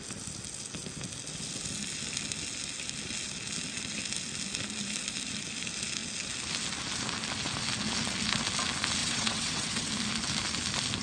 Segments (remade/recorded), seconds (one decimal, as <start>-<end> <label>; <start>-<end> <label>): 0.0-9.0 recorded; 9.0-9.9 remade; 9.9-11.0 recorded